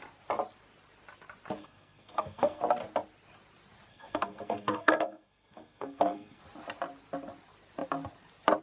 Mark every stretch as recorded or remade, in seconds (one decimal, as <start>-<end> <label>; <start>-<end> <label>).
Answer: 0.0-1.6 recorded; 1.6-2.6 remade; 2.6-3.9 recorded; 3.9-6.4 remade; 6.4-8.6 recorded